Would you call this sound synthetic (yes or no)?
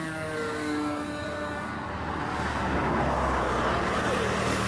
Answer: yes